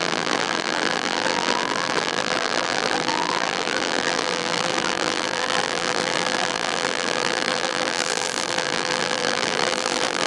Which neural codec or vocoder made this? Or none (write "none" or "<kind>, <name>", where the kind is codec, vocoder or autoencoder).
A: vocoder, BigVGAN v2